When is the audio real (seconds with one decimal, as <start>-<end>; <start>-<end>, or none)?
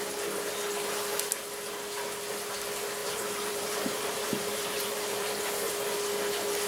0.0-3.0; 5.5-6.7